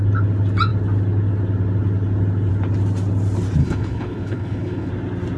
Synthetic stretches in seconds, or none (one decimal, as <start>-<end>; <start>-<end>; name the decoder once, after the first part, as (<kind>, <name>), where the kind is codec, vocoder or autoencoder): 3.6-4.9 (codec, HILCodec)